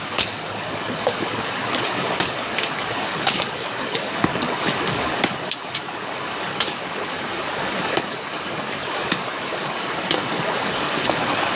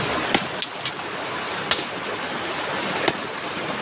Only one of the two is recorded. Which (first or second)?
second